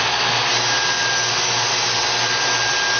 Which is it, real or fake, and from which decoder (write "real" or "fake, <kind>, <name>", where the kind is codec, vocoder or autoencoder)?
real